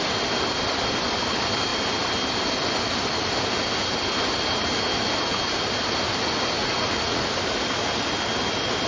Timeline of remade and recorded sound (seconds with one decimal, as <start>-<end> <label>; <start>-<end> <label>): 0.0-6.6 recorded; 6.6-7.2 remade; 7.2-8.9 recorded